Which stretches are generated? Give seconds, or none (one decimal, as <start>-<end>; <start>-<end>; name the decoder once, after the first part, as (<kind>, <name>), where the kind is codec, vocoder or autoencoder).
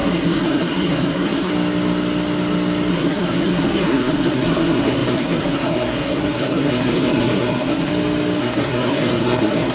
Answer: 0.0-1.5 (codec, SNAC); 2.9-7.9; 8.4-9.7